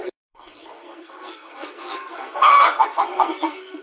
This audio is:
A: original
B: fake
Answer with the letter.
B